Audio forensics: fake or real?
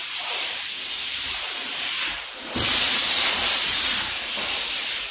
fake